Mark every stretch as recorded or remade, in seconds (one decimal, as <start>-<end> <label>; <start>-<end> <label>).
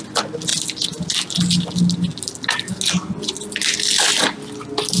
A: 0.0-5.0 recorded